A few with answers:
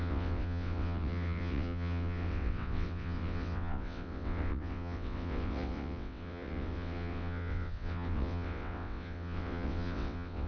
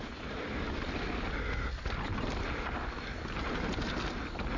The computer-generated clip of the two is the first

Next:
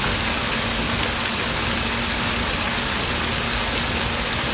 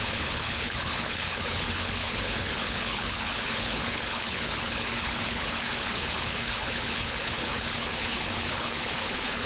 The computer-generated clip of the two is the second